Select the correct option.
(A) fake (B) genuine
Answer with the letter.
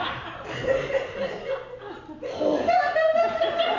B